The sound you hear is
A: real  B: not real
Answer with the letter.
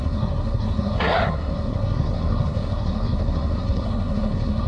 B